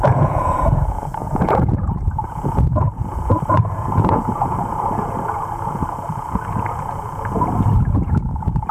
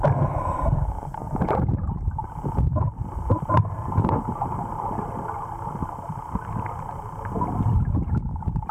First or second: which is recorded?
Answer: second